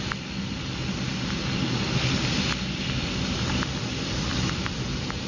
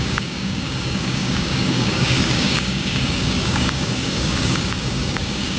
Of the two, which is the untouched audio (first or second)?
first